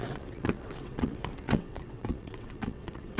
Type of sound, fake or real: fake